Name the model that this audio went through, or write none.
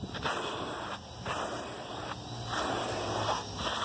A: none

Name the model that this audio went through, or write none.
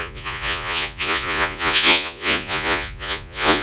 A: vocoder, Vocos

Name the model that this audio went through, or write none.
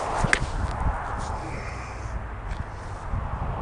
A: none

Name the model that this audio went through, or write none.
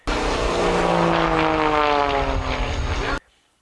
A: none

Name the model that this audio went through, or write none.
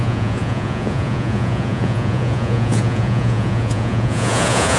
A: vocoder, Vocos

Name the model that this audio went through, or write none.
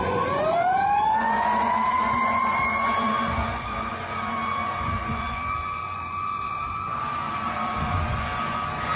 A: vocoder, Vocos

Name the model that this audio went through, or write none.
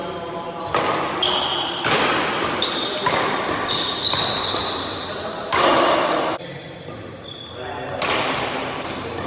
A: none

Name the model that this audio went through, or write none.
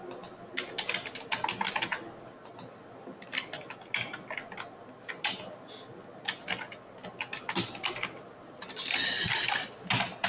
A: none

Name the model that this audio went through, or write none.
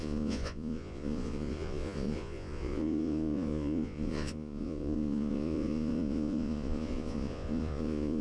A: vocoder, Vocos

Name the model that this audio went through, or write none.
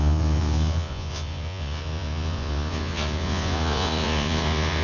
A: vocoder, Vocos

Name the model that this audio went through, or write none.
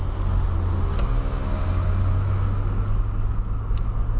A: none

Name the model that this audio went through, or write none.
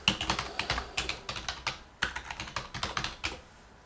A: none